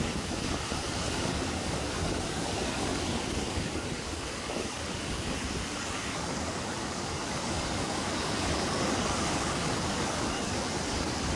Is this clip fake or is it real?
fake